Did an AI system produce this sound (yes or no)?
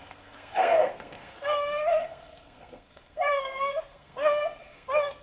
yes